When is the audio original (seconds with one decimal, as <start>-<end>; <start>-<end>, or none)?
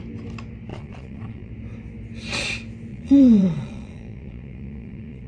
0.0-0.7; 1.5-2.9